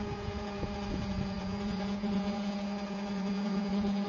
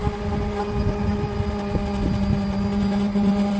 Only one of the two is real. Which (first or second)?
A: second